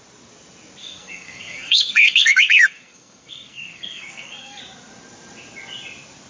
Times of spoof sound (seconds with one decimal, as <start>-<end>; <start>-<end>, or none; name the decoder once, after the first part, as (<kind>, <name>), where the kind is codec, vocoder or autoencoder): 0.8-4.6 (codec, SNAC)